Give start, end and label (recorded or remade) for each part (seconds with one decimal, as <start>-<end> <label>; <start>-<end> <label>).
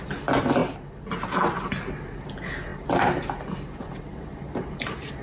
0.0-5.2 recorded